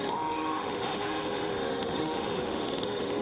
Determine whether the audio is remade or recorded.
remade